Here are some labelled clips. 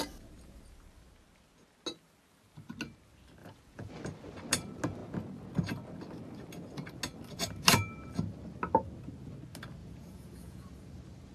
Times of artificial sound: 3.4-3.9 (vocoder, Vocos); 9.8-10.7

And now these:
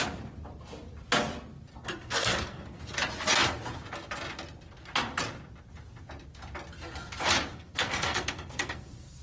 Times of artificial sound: 1.7-2.8 (codec, SNAC); 7.5-9.2

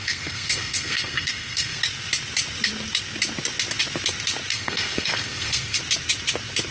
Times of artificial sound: 0.0-1.8 (codec, SNAC); 4.5-5.8